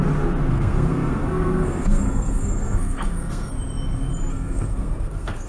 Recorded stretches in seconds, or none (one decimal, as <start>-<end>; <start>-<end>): 0.0-0.5; 3.5-4.3